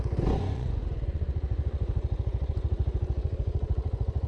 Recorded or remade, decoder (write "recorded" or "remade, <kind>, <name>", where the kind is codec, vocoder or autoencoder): remade, vocoder, Vocos